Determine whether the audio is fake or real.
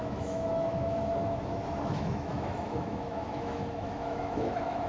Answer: fake